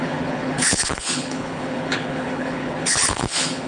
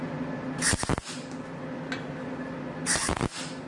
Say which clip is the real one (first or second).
second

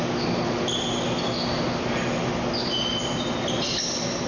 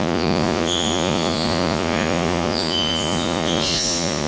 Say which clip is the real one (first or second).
first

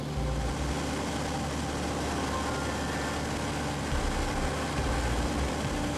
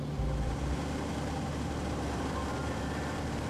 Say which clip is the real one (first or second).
first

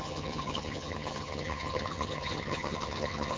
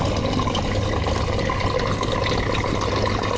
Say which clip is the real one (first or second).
second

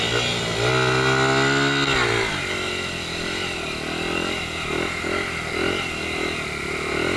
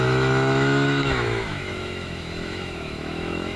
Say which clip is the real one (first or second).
first